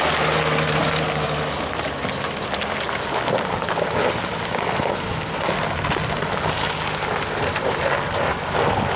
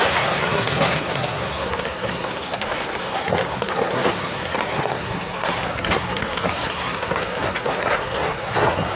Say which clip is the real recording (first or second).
first